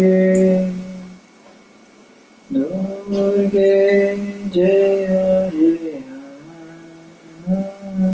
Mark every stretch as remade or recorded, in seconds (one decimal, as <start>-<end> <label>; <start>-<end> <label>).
0.0-8.1 recorded